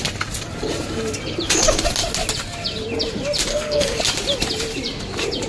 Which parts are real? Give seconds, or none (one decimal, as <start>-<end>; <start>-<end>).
0.0-3.5; 4.0-5.5